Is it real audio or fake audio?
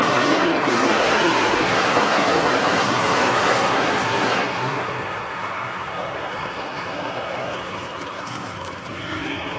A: fake